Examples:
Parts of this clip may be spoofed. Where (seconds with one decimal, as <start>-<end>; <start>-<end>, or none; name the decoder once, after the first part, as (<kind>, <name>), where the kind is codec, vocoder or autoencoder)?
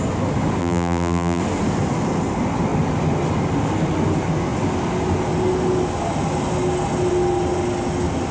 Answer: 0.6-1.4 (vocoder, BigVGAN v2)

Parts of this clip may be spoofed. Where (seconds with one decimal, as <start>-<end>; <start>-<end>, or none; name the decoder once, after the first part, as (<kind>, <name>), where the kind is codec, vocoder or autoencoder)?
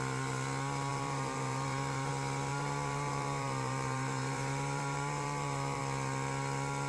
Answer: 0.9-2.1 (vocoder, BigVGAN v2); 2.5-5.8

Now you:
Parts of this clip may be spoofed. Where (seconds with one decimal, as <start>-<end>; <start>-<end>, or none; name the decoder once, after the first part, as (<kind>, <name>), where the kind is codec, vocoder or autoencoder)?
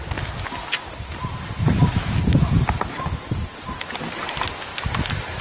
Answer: 0.8-3.3 (vocoder, BigVGAN v2); 4.7-5.4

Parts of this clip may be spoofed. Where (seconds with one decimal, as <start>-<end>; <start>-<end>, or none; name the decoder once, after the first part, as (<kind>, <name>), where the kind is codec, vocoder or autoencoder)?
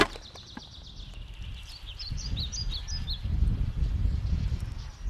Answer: 1.5-4.6 (vocoder, BigVGAN v2)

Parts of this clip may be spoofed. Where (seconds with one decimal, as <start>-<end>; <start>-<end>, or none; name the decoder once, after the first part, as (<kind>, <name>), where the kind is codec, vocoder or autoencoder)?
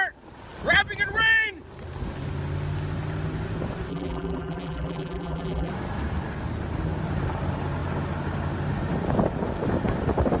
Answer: 3.9-5.7 (vocoder, BigVGAN v2)